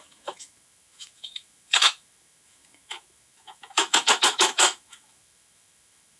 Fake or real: fake